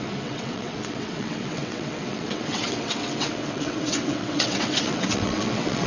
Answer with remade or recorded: remade